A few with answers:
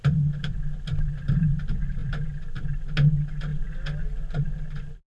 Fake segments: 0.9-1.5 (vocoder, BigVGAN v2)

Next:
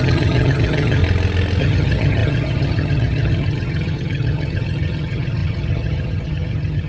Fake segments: 0.0-1.0 (vocoder, HiFi-GAN); 1.6-6.9

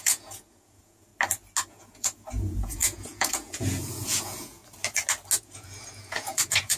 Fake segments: 0.0-1.1 (vocoder, Vocos); 1.7-4.6; 5.4-6.8

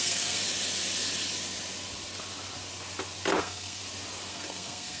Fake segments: 0.0-0.4 (codec, SNAC); 3.4-3.8; 4.3-5.0

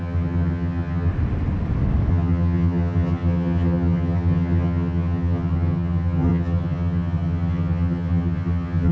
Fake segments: 0.0-1.1 (vocoder, HiFi-GAN); 2.1-8.9

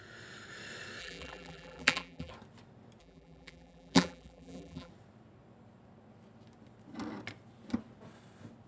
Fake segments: 1.0-2.3 (vocoder, BigVGAN v2); 3.0-4.9

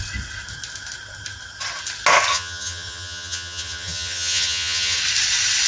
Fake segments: 2.3-5.0 (vocoder, HiFi-GAN)

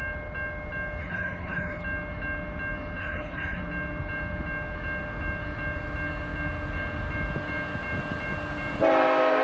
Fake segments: 1.0-1.8 (codec, HILCodec); 3.0-3.6